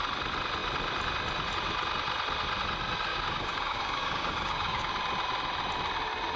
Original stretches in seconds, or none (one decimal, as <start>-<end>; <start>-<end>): 0.0-3.1; 4.9-6.4